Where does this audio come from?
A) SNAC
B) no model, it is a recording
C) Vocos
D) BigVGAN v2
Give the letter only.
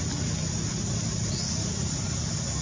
B